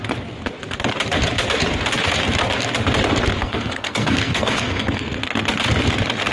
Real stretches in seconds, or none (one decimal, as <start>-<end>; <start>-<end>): 0.0-3.4; 5.2-6.3